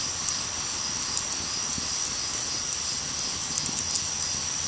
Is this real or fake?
real